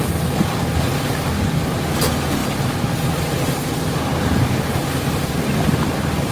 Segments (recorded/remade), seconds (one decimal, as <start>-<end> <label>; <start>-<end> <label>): 0.0-6.3 remade